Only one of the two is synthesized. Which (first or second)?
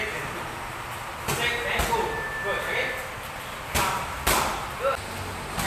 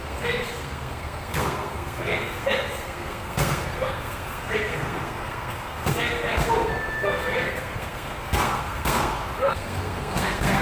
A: second